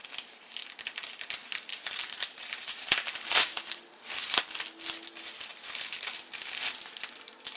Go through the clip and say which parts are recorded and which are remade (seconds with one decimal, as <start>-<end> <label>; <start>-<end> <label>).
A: 0.0-1.7 recorded; 1.7-4.4 remade; 4.4-7.6 recorded